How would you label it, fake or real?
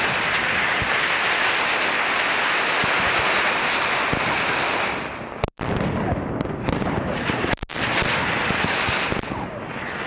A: real